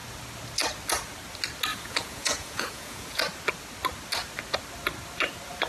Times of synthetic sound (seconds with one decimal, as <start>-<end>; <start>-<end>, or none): 1.7-3.2